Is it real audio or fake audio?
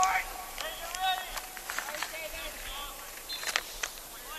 real